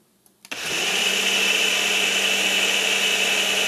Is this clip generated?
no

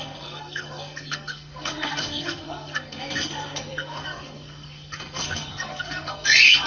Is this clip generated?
yes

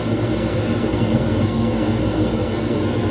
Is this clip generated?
yes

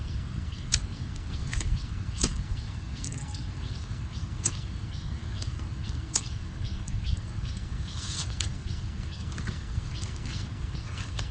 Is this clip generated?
yes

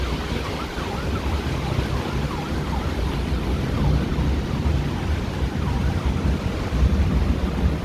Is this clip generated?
no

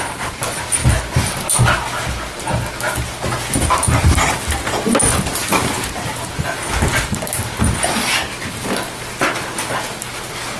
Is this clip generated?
no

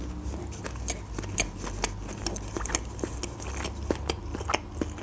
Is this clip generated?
no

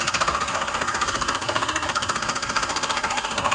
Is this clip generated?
yes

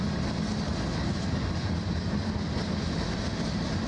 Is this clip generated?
no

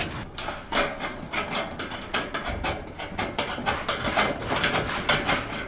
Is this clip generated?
no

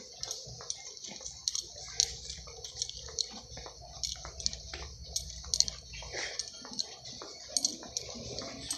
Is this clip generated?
no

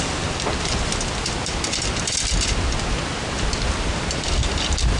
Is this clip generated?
no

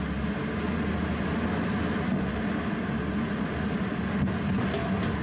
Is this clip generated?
no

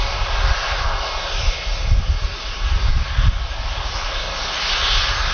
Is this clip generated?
no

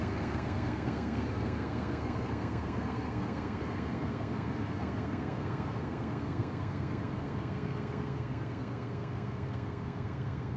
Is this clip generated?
yes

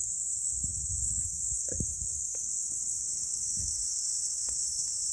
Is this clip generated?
yes